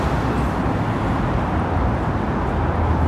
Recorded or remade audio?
recorded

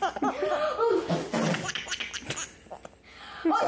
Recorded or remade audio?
recorded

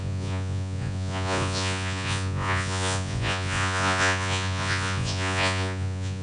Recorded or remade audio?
remade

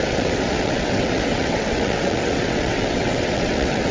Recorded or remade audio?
remade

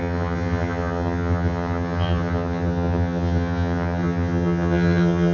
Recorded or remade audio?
remade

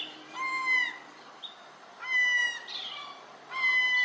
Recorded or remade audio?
recorded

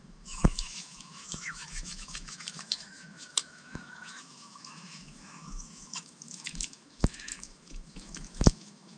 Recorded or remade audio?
remade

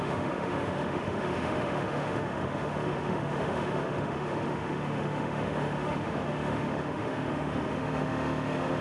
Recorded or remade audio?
remade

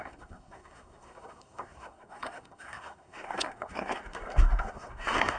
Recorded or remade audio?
remade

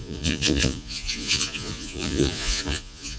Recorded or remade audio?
remade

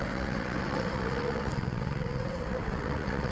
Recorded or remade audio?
remade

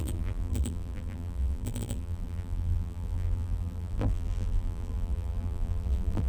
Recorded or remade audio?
remade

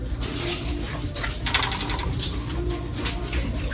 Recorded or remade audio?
recorded